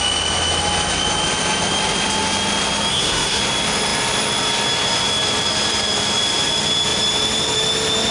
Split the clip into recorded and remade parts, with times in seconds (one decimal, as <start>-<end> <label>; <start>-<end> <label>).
0.0-2.9 recorded; 2.9-3.4 remade; 3.4-8.1 recorded